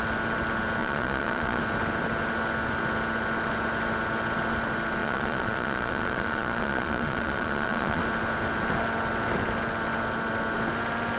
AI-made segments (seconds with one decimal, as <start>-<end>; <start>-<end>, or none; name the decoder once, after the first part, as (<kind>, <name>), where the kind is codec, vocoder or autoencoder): 0.8-1.6 (vocoder, Vocos); 5.0-8.0